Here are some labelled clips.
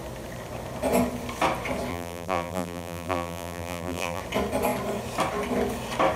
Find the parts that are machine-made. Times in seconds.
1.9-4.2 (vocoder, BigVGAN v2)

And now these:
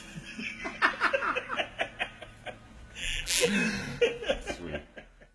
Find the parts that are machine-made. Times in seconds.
3.0-3.5 (vocoder, BigVGAN v2)